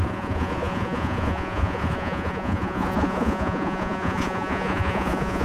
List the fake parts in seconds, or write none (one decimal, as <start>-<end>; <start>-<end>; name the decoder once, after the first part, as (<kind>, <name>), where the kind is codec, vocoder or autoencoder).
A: 0.0-5.4 (vocoder, Vocos)